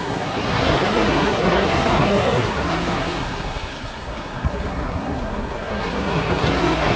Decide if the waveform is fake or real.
fake